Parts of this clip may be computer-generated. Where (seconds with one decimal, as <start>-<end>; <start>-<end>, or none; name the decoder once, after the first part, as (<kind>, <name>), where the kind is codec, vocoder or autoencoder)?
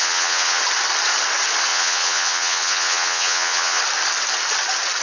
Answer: 0.0-0.6 (vocoder, Vocos); 1.7-3.8